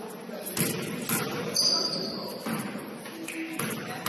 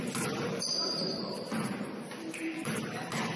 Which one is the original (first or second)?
first